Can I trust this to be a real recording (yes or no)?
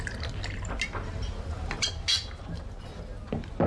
yes